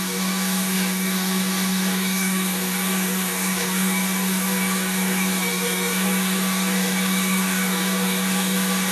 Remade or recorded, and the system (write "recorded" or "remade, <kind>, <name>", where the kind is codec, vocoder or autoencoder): remade, codec, DAC